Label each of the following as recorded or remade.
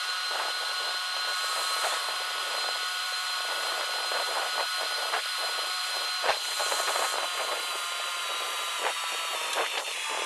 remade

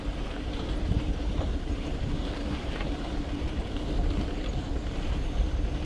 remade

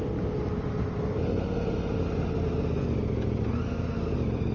recorded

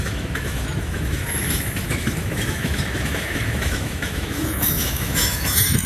remade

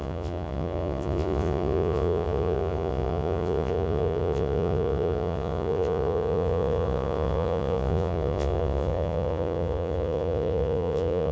remade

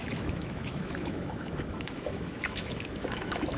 remade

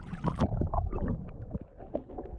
recorded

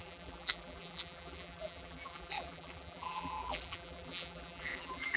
remade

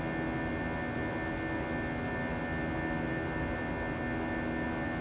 recorded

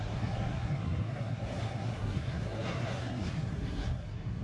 remade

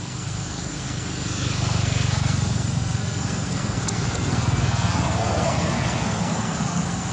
remade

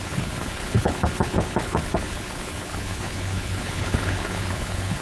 remade